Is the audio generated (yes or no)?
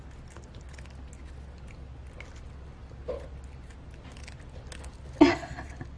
no